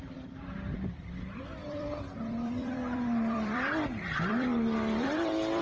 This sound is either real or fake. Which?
fake